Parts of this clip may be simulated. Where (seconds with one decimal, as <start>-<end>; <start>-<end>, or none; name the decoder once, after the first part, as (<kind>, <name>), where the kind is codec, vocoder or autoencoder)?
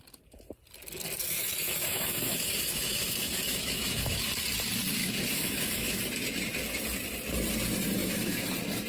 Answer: 1.2-4.3 (autoencoder, DAC-VAE); 5.0-6.0; 8.0-8.5